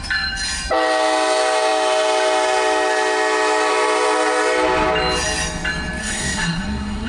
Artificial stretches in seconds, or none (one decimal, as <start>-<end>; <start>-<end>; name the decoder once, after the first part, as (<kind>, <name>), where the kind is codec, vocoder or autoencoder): 6.0-7.1 (codec, SNAC)